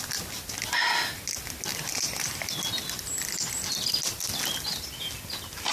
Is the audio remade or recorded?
recorded